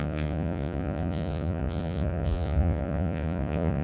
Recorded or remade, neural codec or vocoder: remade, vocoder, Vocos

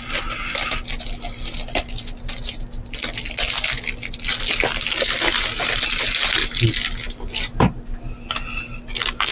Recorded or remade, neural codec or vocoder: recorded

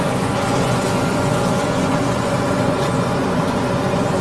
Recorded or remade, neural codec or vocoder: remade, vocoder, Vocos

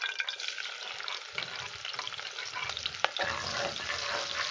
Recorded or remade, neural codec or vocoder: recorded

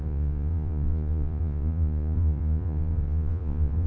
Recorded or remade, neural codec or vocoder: remade, vocoder, Vocos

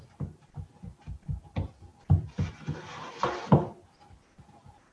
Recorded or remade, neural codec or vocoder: recorded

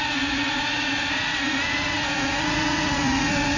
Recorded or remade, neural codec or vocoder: remade, vocoder, Vocos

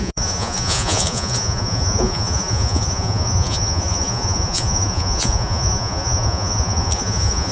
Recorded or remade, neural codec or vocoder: remade, vocoder, Vocos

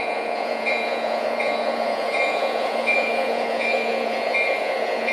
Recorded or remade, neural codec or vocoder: remade, vocoder, Vocos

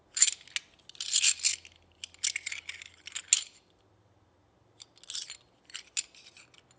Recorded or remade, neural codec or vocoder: recorded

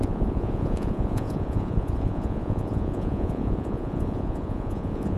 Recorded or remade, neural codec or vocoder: remade, vocoder, Vocos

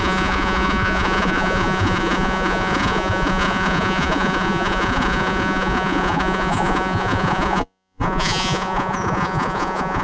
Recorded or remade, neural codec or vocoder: remade, vocoder, Vocos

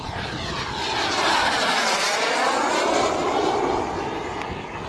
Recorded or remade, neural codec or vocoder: recorded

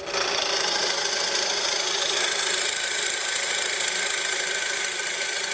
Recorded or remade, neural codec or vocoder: recorded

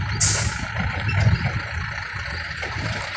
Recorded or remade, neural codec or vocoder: recorded